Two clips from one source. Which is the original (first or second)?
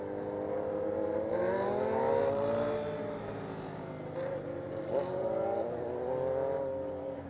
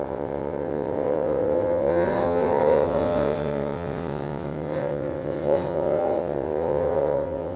first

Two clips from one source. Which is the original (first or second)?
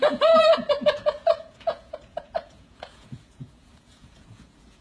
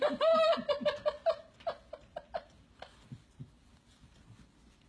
second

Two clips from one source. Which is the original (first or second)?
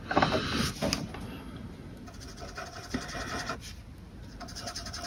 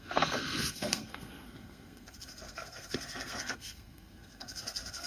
first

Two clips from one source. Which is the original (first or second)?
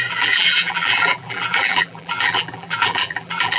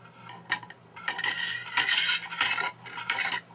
second